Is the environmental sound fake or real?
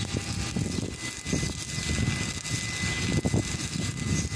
real